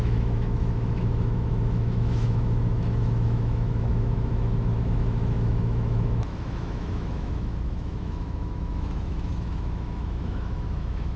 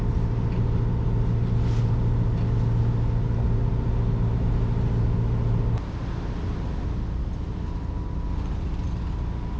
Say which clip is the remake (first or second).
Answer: first